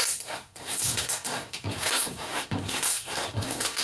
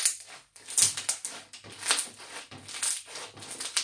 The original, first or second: second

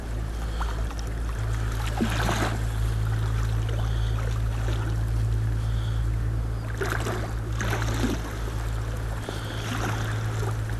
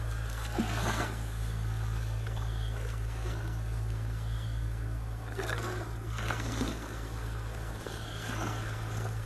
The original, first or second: first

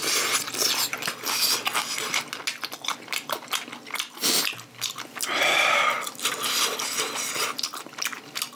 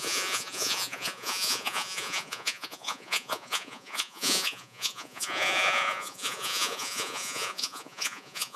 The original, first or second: first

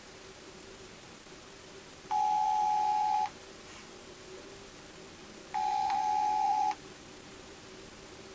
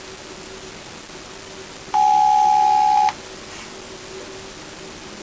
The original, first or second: second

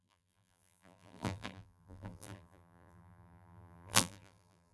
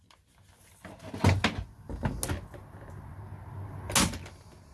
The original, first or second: second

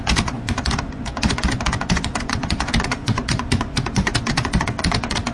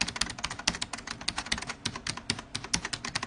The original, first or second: second